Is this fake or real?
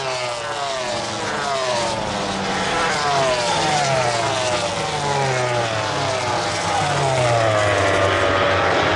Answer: real